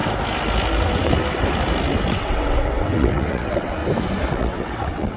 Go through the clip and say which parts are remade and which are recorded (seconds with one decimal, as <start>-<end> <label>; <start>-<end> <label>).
0.0-2.1 recorded; 2.1-3.8 remade; 3.8-4.3 recorded; 4.3-5.2 remade